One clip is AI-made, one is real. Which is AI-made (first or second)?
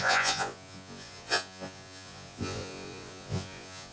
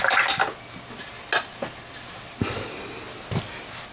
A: first